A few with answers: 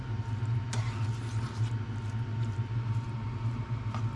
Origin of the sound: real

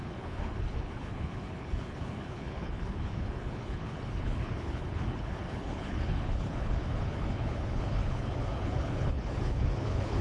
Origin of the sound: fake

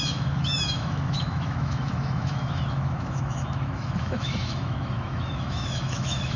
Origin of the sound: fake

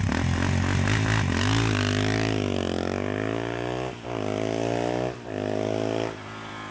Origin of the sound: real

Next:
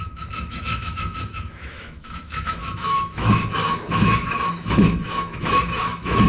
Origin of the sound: fake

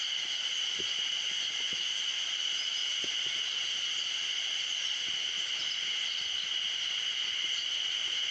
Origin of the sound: real